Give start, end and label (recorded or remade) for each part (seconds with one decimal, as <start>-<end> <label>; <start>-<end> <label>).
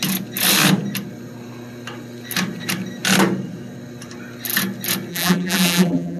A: 0.0-5.1 recorded; 5.1-6.2 remade